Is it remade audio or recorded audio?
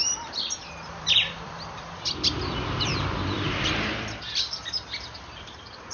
remade